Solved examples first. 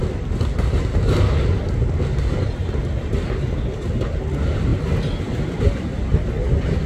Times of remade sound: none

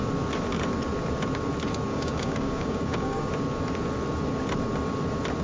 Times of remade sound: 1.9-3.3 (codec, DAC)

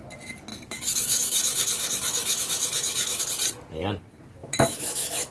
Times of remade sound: 0.5-3.2 (autoencoder, DAC-VAE); 4.4-5.3

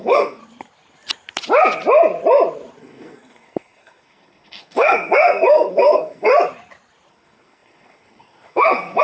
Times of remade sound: 0.0-0.4 (codec, SNAC); 2.8-6.3; 7.1-9.0

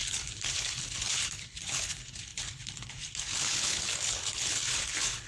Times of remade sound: 0.0-5.3 (codec, HILCodec)